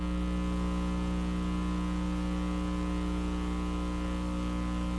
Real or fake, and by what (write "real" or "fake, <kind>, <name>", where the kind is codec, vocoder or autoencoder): real